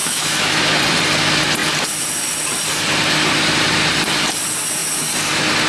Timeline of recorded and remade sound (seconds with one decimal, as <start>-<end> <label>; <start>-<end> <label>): 0.0-0.6 remade; 0.6-5.7 recorded